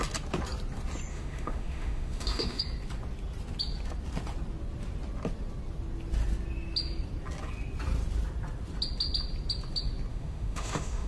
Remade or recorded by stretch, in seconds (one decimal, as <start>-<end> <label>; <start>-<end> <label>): 0.0-1.1 recorded; 1.1-2.6 remade; 2.6-10.1 recorded; 10.1-11.1 remade